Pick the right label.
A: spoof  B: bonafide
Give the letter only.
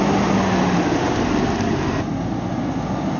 B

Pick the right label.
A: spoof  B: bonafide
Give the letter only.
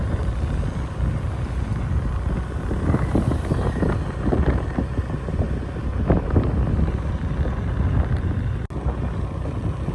B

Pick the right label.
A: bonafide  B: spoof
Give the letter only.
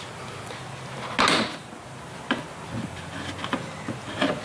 A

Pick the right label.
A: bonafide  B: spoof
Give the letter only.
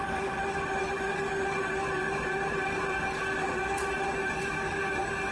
A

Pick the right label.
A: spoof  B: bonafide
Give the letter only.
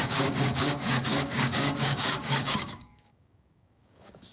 A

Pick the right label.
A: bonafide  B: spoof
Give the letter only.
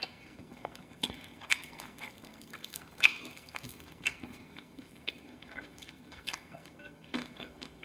B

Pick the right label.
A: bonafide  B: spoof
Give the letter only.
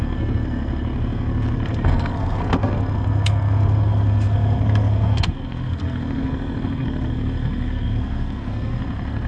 B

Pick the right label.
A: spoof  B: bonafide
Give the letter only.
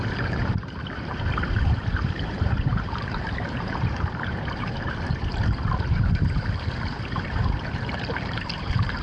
A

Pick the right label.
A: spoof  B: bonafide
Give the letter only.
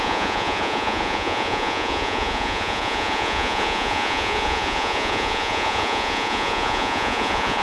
A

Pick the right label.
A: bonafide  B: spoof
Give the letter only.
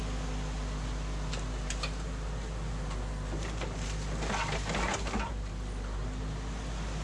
A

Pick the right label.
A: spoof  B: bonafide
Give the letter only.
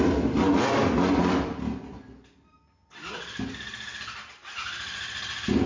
B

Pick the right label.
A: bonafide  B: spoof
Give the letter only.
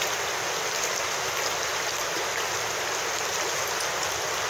A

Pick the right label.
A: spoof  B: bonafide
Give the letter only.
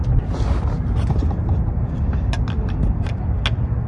B